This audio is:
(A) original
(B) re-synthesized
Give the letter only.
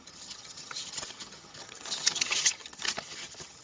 B